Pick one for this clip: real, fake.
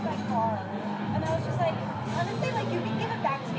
real